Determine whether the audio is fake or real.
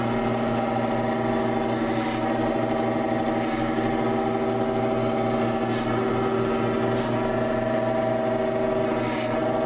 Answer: real